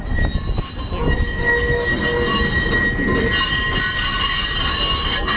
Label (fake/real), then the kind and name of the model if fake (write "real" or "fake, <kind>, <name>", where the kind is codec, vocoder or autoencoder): real